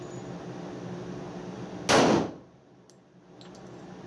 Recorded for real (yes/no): yes